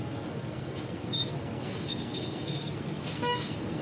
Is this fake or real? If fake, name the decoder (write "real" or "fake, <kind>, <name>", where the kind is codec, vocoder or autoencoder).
fake, codec, SNAC